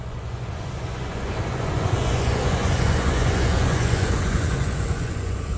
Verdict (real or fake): fake